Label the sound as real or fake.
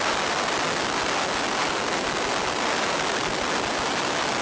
real